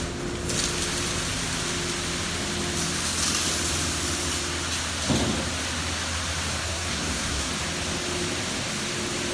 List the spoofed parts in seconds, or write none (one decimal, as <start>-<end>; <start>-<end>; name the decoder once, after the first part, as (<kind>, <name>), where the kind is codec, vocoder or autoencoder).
6.6-7.5 (codec, SNAC)